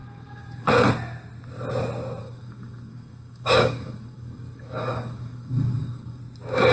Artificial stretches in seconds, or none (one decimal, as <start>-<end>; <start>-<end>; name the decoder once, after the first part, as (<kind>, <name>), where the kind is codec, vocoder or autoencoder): 0.0-0.7 (codec, DAC); 2.2-6.2